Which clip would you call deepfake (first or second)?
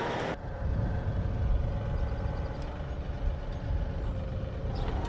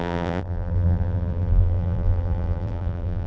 second